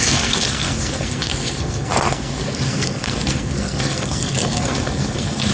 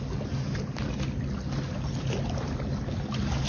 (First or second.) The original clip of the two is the second